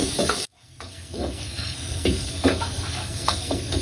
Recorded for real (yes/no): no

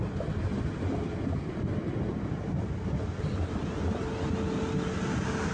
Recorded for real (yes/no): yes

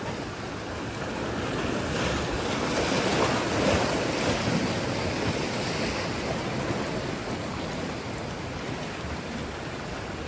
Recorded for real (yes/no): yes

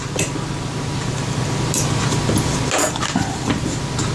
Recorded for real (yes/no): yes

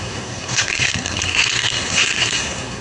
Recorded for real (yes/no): no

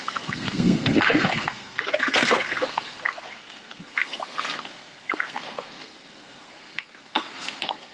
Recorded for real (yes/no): no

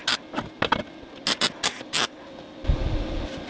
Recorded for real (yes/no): yes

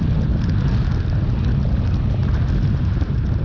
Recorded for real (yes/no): yes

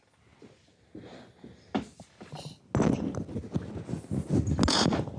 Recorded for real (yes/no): yes